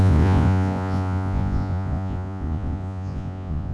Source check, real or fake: fake